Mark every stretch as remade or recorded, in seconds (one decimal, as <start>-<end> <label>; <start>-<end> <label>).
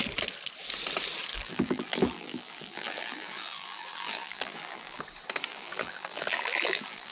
0.0-1.3 recorded; 1.3-5.0 remade; 5.0-5.5 recorded; 5.5-7.1 remade